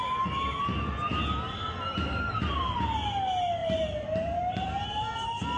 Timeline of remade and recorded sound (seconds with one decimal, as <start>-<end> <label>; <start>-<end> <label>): 0.0-1.1 recorded; 1.1-2.5 remade; 2.5-3.6 recorded; 3.6-4.8 remade; 4.8-5.6 recorded